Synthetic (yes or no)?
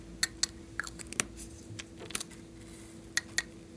no